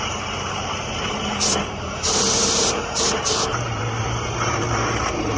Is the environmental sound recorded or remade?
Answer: remade